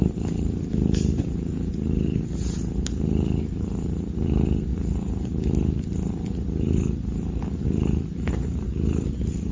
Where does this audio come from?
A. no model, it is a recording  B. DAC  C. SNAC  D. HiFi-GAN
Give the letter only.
A